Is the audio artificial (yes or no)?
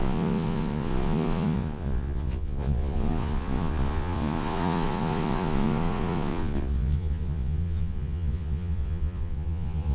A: yes